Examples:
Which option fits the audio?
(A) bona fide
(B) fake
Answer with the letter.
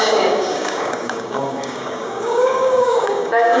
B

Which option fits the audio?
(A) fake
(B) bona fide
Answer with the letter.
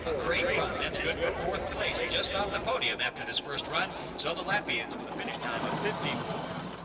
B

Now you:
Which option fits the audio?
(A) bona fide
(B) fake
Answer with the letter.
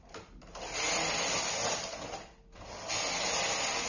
A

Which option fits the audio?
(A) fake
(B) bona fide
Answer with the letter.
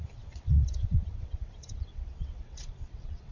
A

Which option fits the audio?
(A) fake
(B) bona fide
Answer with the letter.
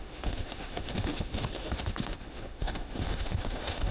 A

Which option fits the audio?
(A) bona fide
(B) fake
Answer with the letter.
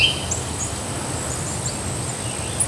A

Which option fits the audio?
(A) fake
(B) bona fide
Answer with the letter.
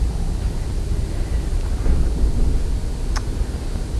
B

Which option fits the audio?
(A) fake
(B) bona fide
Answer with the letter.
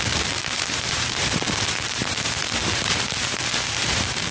A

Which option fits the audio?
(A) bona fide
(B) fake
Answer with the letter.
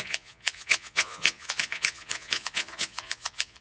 B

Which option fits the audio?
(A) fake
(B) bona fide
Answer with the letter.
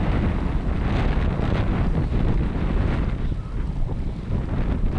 B